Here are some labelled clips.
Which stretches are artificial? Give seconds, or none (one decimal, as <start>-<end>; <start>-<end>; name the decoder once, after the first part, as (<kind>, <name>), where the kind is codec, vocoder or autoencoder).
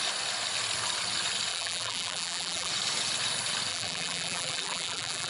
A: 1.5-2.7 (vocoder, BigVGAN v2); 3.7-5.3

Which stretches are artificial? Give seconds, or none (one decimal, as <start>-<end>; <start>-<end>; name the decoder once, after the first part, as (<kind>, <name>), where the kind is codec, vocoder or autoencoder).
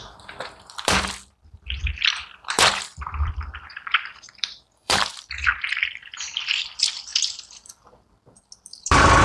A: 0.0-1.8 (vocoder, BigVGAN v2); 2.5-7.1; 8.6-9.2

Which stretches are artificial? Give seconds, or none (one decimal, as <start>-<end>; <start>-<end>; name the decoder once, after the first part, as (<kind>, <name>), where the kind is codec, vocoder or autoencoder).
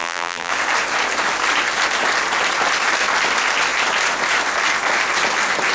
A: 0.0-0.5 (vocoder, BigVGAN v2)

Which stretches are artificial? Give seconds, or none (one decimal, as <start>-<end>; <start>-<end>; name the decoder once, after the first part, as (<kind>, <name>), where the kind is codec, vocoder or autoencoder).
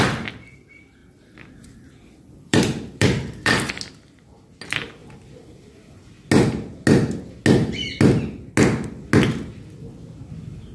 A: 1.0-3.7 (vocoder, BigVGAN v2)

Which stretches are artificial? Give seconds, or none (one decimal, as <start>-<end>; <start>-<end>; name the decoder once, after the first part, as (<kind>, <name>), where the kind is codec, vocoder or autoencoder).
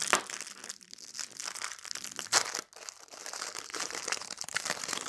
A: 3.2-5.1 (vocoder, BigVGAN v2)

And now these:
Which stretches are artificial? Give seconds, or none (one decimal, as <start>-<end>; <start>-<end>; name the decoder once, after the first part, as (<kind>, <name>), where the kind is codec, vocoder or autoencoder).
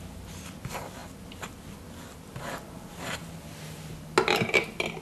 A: none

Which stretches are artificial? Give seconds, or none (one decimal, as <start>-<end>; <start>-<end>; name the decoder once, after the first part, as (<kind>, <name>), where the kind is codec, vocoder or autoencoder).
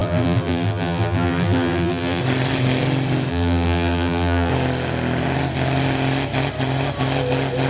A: 0.0-2.2 (vocoder, BigVGAN v2); 3.3-4.5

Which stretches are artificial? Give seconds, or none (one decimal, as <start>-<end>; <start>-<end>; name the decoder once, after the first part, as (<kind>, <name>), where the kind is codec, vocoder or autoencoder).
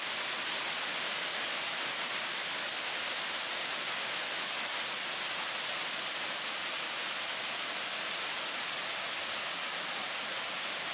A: 1.3-2.1 (vocoder, BigVGAN v2); 10.0-10.9